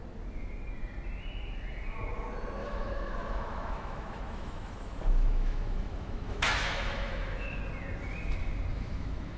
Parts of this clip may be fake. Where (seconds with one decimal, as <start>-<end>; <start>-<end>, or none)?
2.6-7.6; 8.7-9.4